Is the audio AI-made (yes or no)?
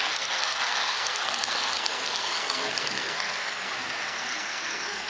yes